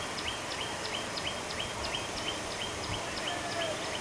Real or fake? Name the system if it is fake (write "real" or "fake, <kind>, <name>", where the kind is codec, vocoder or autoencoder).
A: real